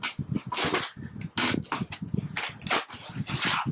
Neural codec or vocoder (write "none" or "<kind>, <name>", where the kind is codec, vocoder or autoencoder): none